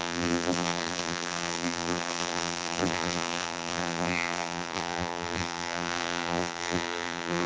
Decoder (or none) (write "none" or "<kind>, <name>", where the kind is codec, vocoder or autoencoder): vocoder, BigVGAN v2